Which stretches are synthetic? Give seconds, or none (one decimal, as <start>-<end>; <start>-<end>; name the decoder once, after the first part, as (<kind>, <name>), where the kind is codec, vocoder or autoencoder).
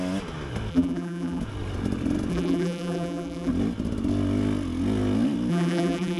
0.7-1.4 (vocoder, BigVGAN v2); 2.3-3.5; 5.5-6.2